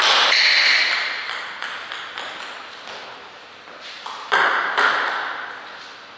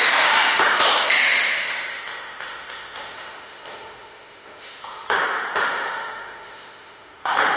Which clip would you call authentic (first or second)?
first